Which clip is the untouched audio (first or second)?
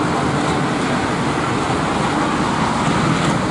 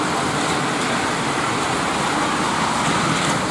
first